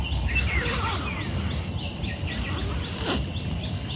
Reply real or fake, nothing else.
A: real